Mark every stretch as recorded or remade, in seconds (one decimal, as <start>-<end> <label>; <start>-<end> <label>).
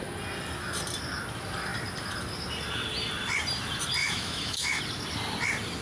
0.0-4.0 recorded; 4.0-4.8 remade; 4.8-5.8 recorded